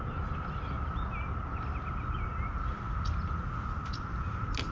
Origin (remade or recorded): recorded